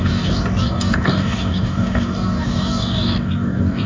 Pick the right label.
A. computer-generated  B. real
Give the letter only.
A